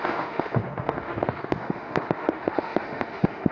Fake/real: fake